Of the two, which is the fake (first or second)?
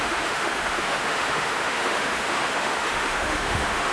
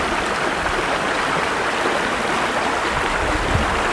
first